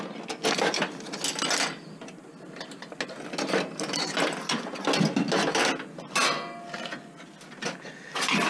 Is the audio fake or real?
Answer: real